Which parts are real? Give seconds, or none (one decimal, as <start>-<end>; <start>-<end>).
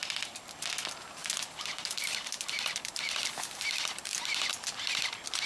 0.0-1.2; 4.5-5.5